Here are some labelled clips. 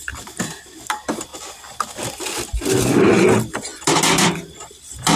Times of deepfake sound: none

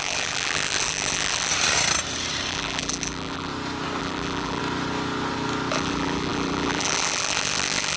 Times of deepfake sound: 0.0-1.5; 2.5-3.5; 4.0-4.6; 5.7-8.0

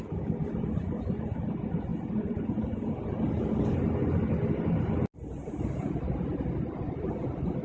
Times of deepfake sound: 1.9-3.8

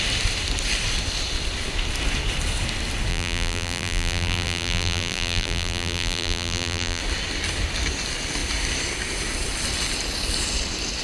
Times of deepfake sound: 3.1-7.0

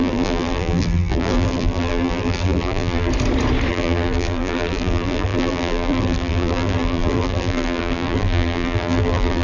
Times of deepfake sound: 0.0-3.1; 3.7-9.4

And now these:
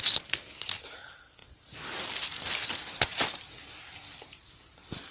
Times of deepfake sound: none